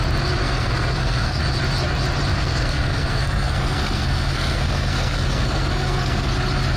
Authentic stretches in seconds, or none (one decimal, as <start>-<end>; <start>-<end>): 0.0-0.4; 1.4-2.3; 6.3-6.8

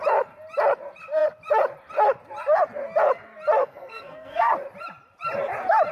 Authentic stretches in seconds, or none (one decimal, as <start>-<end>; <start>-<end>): 0.0-3.6; 4.5-5.9